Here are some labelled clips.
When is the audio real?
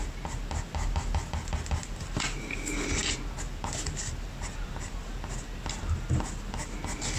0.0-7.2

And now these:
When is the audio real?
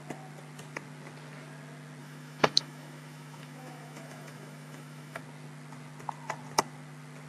0.0-2.0; 5.2-7.3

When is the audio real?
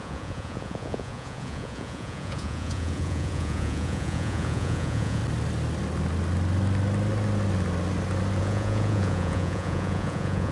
5.2-8.4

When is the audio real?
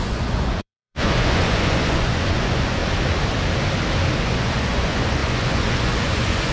2.8-4.2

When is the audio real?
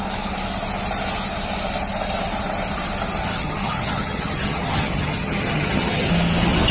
0.0-3.2; 6.1-6.7